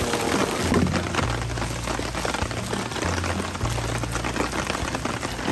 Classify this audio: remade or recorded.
recorded